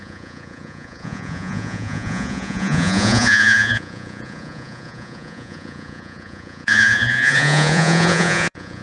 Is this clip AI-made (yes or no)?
yes